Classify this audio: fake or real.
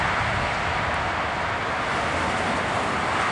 real